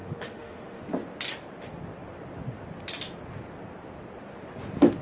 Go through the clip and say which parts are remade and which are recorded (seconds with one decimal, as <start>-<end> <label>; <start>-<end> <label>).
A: 0.0-0.8 remade; 0.8-5.0 recorded